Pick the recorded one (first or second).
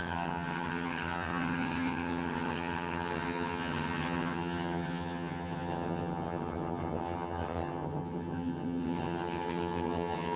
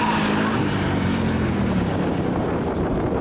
second